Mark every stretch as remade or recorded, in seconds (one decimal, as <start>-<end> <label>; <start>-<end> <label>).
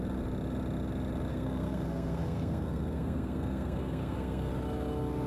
0.0-1.3 recorded; 1.3-4.5 remade; 4.5-5.3 recorded